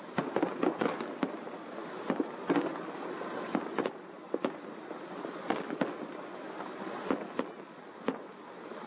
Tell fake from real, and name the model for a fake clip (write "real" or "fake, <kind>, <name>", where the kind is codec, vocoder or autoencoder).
real